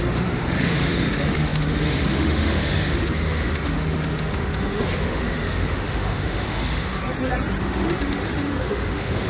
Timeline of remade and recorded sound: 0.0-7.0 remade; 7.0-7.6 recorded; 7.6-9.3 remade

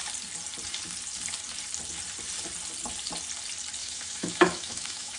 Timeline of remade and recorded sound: 0.0-3.8 recorded; 3.8-5.2 remade

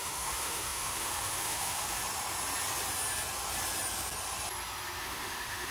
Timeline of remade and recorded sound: 0.0-2.0 remade; 2.0-5.0 recorded; 5.0-5.7 remade

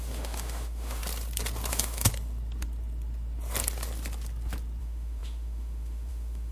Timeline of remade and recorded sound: 0.0-1.0 remade; 1.0-1.7 recorded; 1.7-2.1 remade; 2.1-4.8 recorded; 4.8-6.5 remade

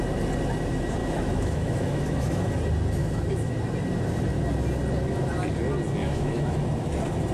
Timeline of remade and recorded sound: 0.0-1.0 recorded; 1.0-2.5 remade; 2.5-3.0 recorded; 3.0-3.5 remade; 3.5-6.0 recorded; 6.0-6.6 remade; 6.6-7.3 recorded

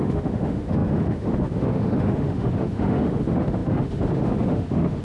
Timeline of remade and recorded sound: 0.0-5.0 remade

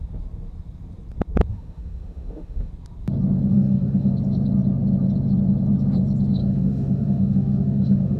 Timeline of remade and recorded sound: 0.0-1.5 recorded; 1.5-2.7 remade; 2.7-3.5 recorded; 3.5-4.1 remade; 4.1-6.4 recorded; 6.4-8.2 remade